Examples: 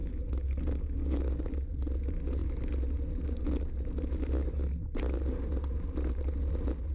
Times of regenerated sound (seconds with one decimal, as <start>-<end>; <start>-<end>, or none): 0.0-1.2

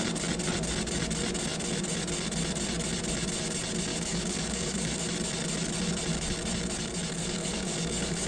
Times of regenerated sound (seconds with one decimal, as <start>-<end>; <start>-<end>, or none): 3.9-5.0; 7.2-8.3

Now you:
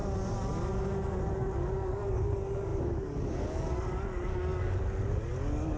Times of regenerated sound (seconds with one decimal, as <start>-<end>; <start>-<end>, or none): 1.2-5.8

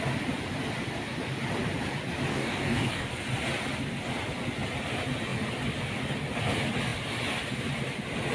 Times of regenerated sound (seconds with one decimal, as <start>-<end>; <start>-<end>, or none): 2.3-3.1

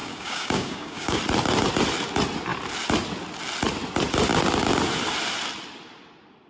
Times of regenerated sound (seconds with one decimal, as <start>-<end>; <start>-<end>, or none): 0.0-1.2

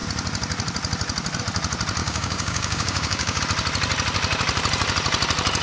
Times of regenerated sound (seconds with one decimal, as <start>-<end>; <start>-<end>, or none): 2.0-3.4